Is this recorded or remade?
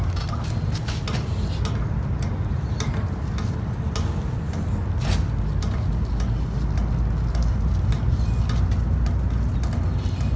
recorded